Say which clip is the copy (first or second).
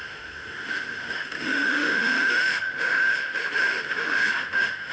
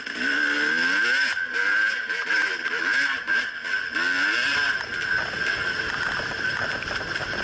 first